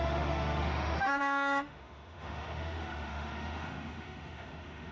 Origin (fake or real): fake